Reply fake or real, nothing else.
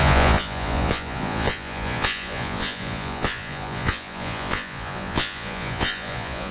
fake